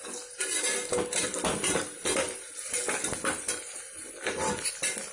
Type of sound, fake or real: real